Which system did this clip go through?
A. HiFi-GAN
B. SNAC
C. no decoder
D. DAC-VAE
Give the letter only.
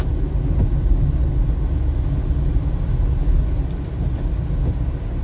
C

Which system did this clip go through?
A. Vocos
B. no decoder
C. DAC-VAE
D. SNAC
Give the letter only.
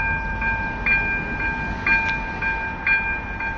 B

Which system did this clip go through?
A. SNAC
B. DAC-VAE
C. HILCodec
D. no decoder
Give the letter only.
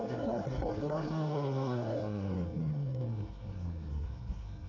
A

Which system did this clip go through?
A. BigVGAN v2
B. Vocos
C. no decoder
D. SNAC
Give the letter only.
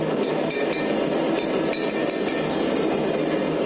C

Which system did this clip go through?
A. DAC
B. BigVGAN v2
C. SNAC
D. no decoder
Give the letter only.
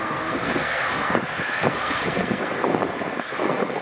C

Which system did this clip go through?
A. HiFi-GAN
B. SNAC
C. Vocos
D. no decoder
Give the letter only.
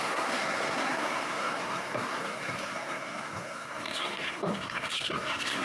B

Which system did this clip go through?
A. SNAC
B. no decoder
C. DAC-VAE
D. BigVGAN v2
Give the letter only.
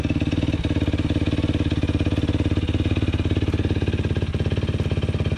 B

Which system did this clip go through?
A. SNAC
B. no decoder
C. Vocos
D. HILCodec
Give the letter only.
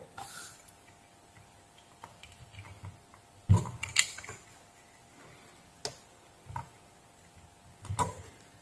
B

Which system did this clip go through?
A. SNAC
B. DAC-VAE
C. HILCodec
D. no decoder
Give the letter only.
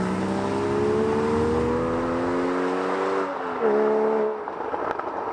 D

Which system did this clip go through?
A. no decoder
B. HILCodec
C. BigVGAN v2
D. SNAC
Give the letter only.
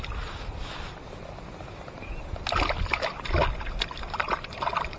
A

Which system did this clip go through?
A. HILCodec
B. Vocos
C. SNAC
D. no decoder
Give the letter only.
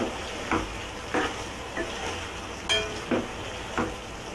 D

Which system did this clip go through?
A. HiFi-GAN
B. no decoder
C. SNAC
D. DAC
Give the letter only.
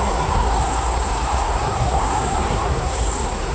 C